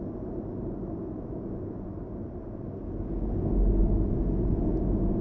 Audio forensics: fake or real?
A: real